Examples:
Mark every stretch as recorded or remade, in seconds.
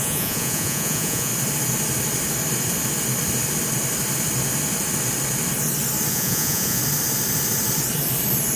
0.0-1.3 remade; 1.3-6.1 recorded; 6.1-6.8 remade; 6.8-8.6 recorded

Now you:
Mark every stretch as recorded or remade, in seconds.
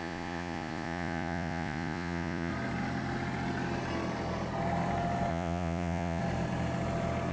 0.0-2.5 remade; 2.5-5.3 recorded; 5.3-6.2 remade; 6.2-7.3 recorded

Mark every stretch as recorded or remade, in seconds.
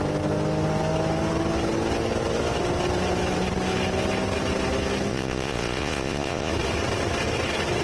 0.0-5.1 recorded; 5.1-6.5 remade; 6.5-7.8 recorded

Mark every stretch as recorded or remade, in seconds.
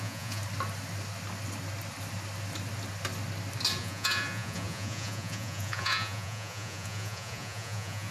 0.0-0.4 remade; 0.4-3.8 recorded; 3.8-8.1 remade